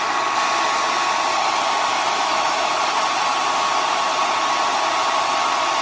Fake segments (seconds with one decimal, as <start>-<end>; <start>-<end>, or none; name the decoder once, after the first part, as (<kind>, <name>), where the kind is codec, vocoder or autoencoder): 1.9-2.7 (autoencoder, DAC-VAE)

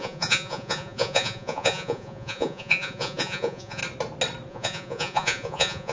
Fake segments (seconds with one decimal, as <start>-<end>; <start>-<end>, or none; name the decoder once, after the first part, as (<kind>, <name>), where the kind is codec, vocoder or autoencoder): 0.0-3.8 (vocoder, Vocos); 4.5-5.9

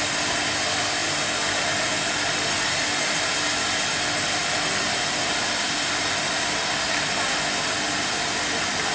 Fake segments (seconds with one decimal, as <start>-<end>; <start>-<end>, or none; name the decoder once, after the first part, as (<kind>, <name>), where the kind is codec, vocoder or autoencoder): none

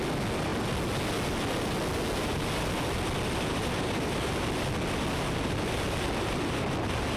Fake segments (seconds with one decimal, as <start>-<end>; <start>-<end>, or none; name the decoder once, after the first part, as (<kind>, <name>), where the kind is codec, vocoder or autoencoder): none

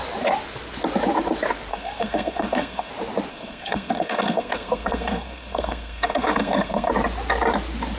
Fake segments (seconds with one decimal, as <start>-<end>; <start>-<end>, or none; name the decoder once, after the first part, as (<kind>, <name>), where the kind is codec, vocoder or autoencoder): 1.7-2.9 (codec, SNAC); 3.3-6.9

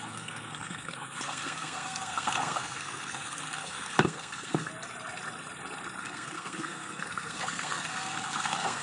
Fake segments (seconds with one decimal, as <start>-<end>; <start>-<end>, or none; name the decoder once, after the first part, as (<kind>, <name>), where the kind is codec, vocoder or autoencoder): 0.0-4.7 (codec, SNAC); 6.0-8.8

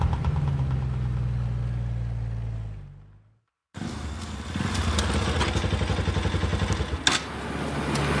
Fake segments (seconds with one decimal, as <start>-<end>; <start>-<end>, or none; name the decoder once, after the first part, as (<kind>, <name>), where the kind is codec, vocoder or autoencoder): none

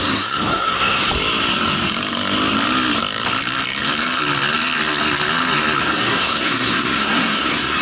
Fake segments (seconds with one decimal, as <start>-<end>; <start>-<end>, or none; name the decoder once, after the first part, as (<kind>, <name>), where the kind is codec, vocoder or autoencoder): 0.0-1.1 (codec, SNAC); 5.8-7.8